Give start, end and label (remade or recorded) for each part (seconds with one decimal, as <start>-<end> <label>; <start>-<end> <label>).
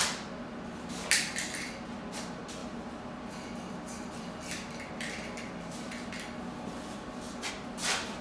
0.0-8.2 recorded